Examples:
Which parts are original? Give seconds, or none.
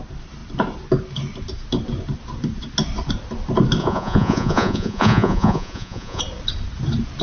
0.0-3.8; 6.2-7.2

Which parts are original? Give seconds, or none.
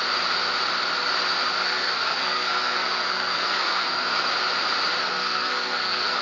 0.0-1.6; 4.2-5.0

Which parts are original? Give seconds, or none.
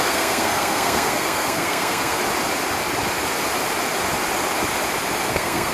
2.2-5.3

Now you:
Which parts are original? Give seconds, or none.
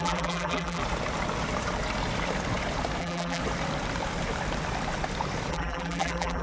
0.8-3.0; 3.4-5.5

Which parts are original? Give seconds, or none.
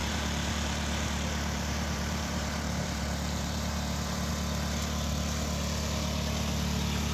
4.3-7.1